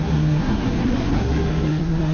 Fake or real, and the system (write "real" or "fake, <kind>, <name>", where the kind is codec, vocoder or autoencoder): fake, codec, SNAC